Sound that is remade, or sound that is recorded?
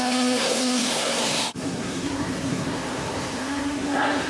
remade